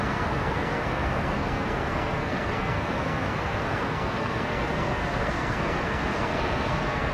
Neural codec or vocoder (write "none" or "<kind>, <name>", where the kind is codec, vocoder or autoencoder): codec, SNAC